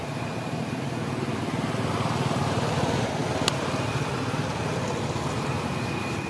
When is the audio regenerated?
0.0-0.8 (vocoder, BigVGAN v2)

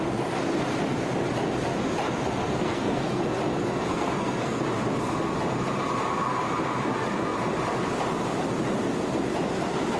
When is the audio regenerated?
2.5-3.2 (codec, SNAC); 3.9-4.6

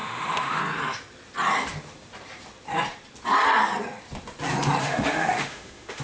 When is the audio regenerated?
0.0-0.6 (autoencoder, DAC-VAE); 4.8-6.0

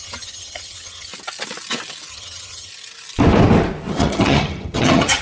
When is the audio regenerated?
0.0-1.1 (vocoder, HiFi-GAN); 2.1-2.7; 3.9-5.2

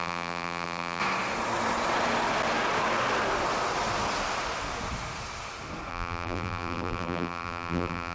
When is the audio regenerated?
0.0-1.0 (vocoder, BigVGAN v2); 5.9-8.1

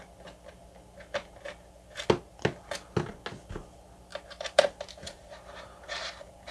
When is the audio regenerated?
4.1-6.5 (vocoder, BigVGAN v2)